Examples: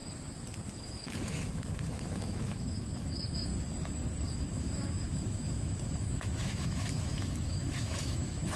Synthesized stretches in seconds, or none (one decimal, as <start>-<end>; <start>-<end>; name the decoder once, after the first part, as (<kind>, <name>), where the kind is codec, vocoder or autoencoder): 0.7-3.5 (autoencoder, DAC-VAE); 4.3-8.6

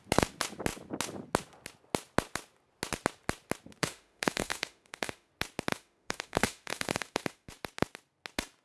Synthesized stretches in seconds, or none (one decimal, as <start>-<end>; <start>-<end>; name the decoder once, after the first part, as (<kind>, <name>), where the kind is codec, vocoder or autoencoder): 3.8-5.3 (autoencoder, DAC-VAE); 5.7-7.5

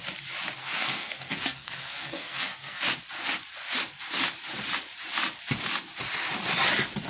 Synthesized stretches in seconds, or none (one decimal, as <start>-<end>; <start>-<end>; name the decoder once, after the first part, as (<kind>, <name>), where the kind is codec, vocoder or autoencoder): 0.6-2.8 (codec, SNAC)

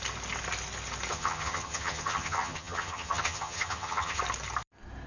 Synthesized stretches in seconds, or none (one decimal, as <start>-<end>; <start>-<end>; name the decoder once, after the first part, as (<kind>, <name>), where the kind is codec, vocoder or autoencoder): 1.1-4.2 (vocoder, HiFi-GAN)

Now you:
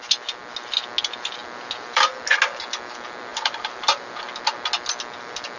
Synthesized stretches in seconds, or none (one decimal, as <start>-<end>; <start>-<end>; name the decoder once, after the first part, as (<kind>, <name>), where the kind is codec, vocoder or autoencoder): 1.4-2.1 (vocoder, BigVGAN v2); 3.3-4.2

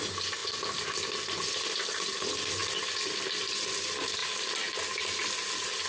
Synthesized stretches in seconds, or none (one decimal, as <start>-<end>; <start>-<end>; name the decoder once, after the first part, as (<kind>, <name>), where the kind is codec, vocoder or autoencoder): none